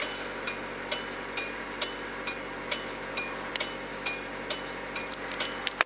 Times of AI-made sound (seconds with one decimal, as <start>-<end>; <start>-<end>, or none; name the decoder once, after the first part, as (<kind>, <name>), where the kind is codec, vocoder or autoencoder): none